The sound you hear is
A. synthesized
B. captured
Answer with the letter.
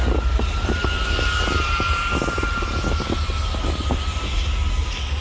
B